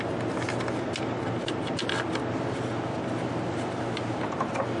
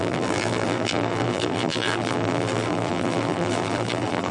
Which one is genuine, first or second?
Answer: first